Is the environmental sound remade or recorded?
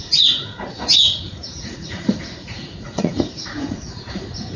remade